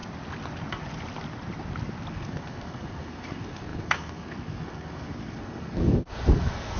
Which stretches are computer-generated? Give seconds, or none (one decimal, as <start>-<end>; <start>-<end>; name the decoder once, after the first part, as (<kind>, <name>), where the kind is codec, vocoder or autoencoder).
2.1-6.8 (codec, SNAC)